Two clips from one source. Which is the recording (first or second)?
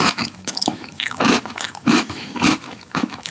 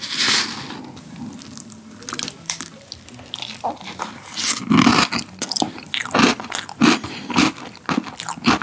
second